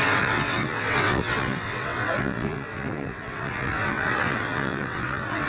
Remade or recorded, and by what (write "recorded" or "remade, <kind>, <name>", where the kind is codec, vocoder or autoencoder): remade, vocoder, WaveNeXt